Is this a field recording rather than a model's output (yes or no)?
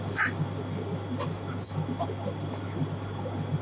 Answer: yes